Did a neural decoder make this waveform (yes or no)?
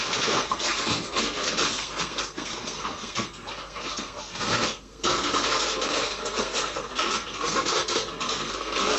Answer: yes